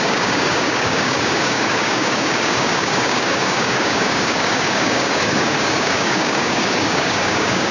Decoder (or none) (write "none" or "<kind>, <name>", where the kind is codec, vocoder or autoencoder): codec, DAC